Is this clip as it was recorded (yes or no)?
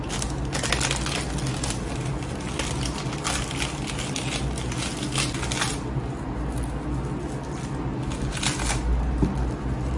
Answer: yes